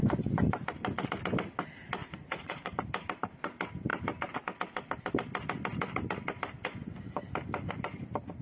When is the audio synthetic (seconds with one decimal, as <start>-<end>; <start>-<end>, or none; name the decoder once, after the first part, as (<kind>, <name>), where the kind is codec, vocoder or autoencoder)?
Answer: 2.0-2.7 (vocoder, Vocos)